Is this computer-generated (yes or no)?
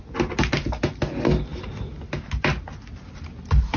no